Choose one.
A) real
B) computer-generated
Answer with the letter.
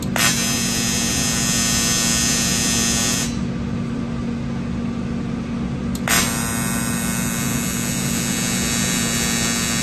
A